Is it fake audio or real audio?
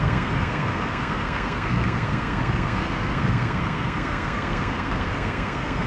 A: fake